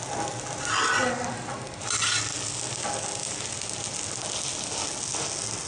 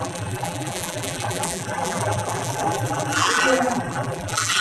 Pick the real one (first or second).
first